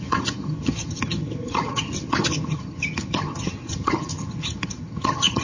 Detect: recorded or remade remade